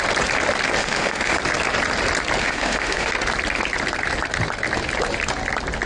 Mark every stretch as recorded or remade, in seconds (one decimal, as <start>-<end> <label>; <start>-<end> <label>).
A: 0.0-0.8 recorded; 0.8-1.4 remade; 1.4-2.4 recorded; 2.4-3.1 remade; 3.1-5.9 recorded